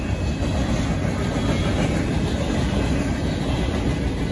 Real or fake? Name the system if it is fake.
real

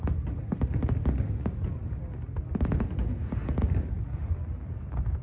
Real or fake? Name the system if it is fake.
real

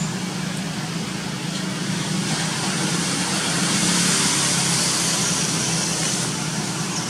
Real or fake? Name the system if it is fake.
real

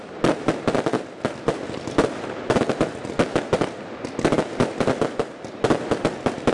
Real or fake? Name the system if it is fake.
real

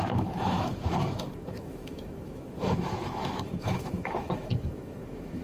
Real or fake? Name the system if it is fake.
fake, autoencoder, DAC-VAE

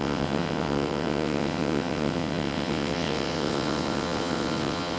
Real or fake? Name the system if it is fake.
fake, vocoder, WaveNeXt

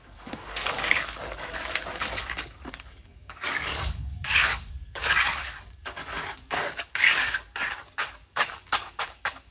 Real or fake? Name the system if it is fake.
fake, codec, DAC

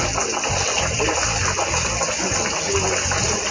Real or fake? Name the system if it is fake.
real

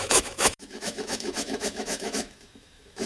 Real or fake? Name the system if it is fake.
fake, autoencoder, DAC-VAE